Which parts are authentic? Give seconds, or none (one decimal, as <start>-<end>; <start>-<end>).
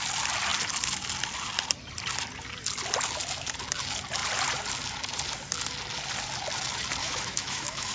0.0-7.0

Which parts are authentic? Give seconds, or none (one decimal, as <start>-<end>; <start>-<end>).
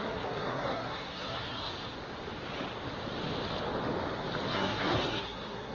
1.7-4.5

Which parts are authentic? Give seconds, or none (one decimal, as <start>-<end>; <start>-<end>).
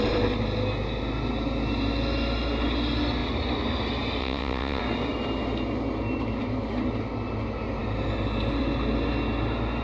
0.0-4.2; 4.8-9.8